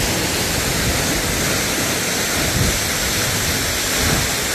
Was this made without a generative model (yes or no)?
yes